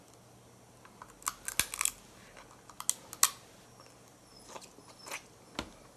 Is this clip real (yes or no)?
yes